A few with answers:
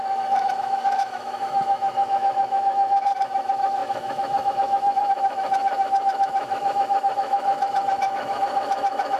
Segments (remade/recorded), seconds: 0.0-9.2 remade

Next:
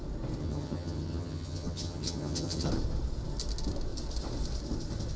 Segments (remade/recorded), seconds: 0.0-0.4 recorded; 0.4-2.7 remade; 2.7-5.2 recorded

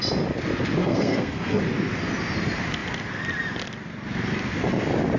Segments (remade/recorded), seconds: 0.0-0.8 recorded; 0.8-1.6 remade; 1.6-5.2 recorded

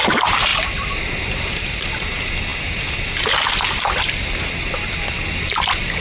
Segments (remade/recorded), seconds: 0.0-6.0 recorded